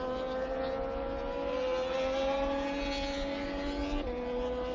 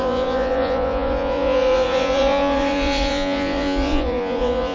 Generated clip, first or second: second